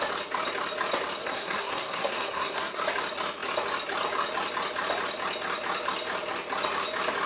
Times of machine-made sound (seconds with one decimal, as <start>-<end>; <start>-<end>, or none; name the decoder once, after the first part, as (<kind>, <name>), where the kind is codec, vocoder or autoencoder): 1.2-2.8 (codec, SNAC)